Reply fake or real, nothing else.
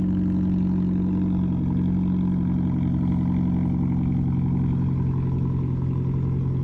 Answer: real